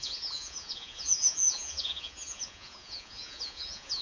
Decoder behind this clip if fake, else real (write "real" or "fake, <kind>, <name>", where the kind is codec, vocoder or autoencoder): fake, vocoder, Vocos